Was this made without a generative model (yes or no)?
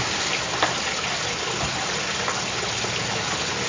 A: yes